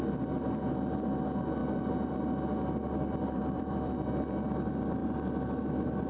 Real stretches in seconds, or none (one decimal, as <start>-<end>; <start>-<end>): 0.0-2.8; 3.9-6.1